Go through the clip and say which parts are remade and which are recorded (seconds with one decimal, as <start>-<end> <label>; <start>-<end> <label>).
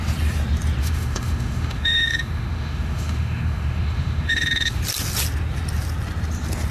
0.0-0.8 recorded; 0.8-4.8 remade; 4.8-6.7 recorded